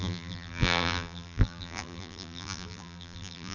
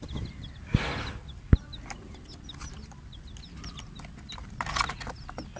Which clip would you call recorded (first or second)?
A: second